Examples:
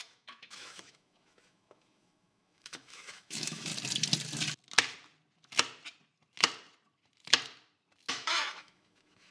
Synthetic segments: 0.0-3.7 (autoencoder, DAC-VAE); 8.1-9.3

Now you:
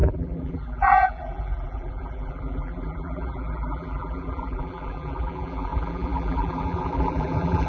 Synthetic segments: 0.0-7.7 (vocoder, BigVGAN v2)

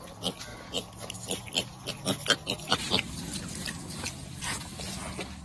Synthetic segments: none

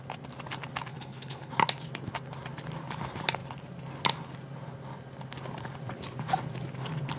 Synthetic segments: 0.9-1.5 (codec, HILCodec)

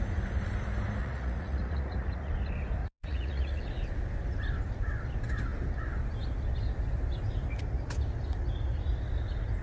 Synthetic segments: 1.0-2.3 (vocoder, Vocos); 2.8-3.6

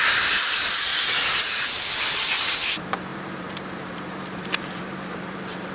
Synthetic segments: 0.0-0.9 (vocoder, BigVGAN v2); 1.5-5.7

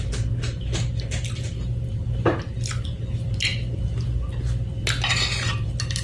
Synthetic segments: none

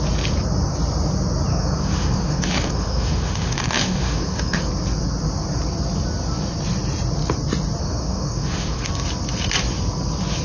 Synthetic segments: 1.5-4.7 (autoencoder, DAC-VAE); 7.8-8.9